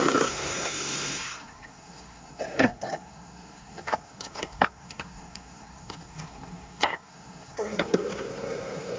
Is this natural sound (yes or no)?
no